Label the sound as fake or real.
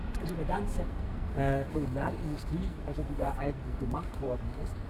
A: fake